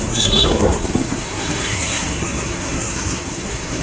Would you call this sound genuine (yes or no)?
no